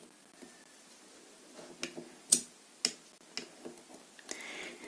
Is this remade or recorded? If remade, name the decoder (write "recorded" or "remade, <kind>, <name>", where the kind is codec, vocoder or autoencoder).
recorded